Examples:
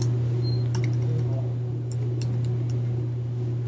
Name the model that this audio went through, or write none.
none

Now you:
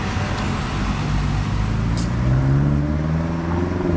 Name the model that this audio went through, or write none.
none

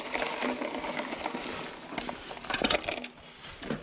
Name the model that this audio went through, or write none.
none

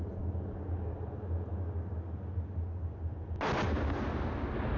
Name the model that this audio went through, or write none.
none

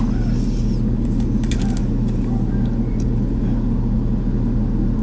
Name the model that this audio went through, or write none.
none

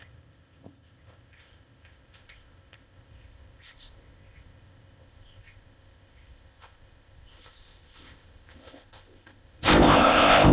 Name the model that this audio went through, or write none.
codec, ZipCodec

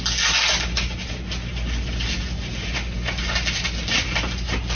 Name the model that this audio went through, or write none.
none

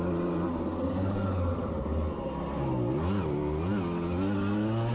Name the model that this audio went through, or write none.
none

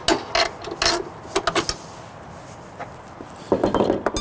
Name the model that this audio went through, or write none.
none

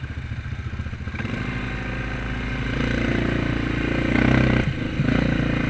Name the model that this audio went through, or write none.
none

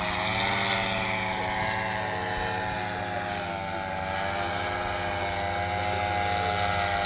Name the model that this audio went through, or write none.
none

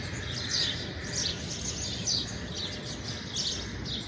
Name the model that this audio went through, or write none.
none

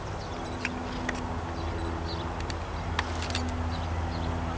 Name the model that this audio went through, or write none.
none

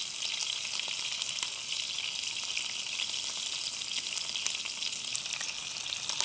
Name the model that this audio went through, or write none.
none